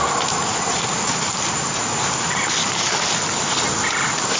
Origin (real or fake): real